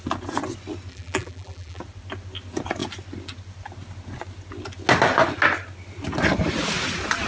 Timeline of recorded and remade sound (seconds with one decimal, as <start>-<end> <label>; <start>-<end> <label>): 0.0-0.9 recorded; 0.9-1.8 remade; 1.8-7.3 recorded